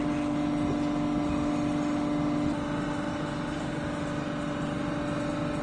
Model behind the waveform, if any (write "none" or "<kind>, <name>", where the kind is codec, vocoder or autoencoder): none